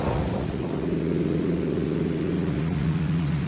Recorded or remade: remade